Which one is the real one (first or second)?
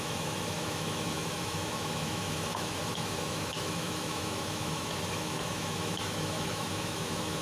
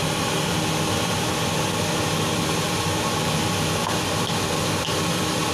second